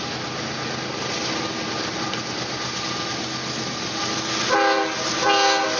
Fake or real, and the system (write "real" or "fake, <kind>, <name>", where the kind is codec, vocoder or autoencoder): real